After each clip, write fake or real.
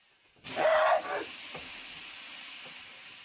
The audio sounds real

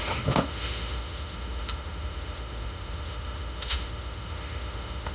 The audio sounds fake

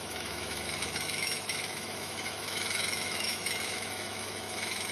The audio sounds fake